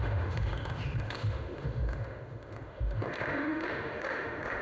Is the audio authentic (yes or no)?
no